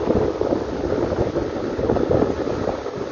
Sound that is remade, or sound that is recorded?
recorded